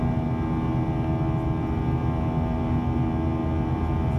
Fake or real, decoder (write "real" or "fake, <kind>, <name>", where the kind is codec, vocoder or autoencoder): real